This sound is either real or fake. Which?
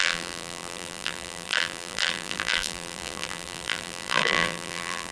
fake